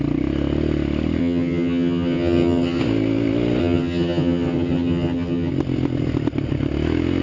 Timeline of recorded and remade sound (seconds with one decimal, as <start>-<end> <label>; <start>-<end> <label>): 0.0-1.2 recorded; 1.2-2.8 remade; 2.8-3.6 recorded; 3.6-5.5 remade; 5.5-7.2 recorded